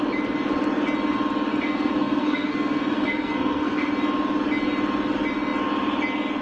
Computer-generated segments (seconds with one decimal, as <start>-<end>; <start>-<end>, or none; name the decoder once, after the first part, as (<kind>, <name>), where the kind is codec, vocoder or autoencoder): 1.5-3.9 (codec, SNAC)